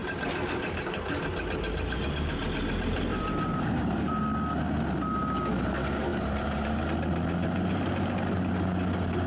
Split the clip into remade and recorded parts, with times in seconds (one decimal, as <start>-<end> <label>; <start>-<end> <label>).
0.0-3.1 recorded; 3.1-4.2 remade; 4.2-6.1 recorded; 6.1-6.8 remade; 6.8-9.3 recorded